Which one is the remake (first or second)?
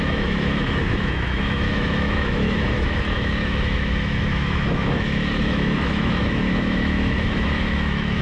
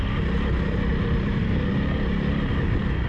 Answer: first